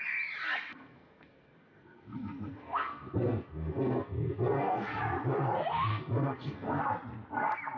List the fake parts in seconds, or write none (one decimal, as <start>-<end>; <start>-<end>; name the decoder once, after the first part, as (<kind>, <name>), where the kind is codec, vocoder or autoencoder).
0.7-5.0 (codec, SNAC); 5.9-6.8